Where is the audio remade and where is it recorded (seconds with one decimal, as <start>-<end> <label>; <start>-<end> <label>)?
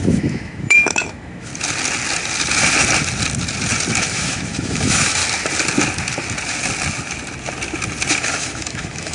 0.0-1.5 remade; 1.5-4.0 recorded; 4.0-5.2 remade; 5.2-8.1 recorded; 8.1-9.1 remade